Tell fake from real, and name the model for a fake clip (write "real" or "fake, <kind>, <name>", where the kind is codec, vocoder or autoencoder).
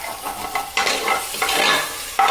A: real